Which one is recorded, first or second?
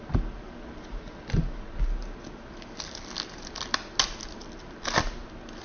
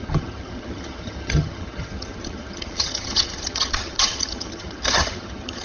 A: first